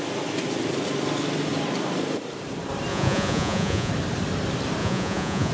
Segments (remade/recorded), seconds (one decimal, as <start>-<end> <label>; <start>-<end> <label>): 0.0-2.9 recorded; 2.9-3.9 remade; 3.9-4.8 recorded; 4.8-5.5 remade